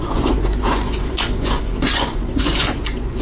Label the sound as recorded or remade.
remade